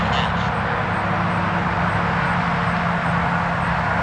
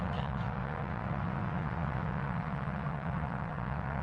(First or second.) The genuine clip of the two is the first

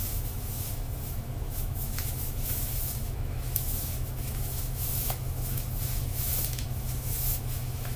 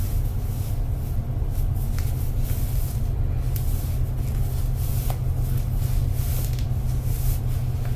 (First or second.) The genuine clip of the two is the second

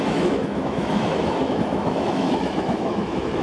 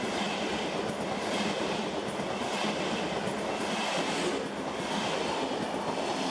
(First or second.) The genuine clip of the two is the second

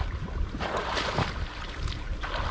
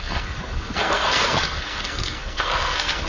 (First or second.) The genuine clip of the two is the first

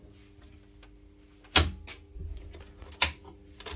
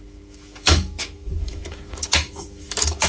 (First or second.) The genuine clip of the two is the first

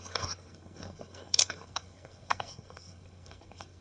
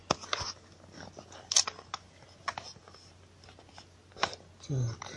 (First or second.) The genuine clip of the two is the second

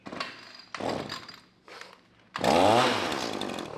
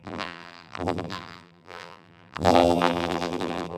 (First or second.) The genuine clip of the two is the first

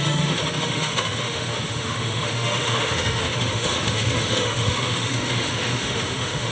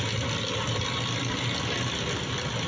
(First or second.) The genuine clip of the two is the second